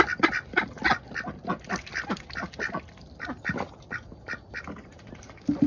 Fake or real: real